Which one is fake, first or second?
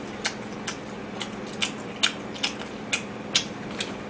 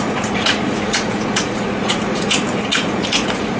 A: second